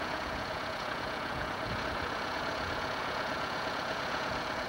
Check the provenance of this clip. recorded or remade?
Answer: remade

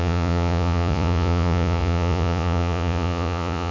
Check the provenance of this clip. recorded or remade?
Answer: remade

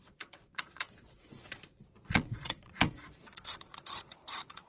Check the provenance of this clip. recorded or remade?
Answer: remade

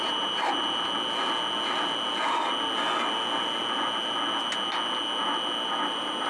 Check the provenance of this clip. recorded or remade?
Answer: recorded